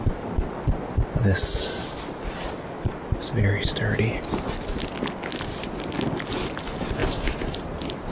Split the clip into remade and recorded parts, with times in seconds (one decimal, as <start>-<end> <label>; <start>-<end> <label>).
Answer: 0.0-8.1 recorded